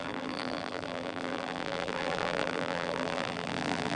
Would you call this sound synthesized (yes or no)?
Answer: yes